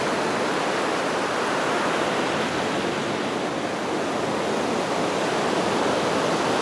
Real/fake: real